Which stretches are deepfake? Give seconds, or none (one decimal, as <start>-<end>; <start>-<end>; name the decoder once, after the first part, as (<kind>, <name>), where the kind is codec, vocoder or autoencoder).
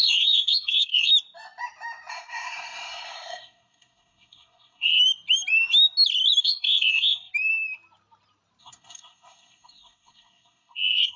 0.0-1.1 (codec, SNAC); 2.1-5.0; 6.4-7.3; 8.6-11.2